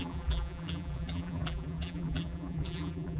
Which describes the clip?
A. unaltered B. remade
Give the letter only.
B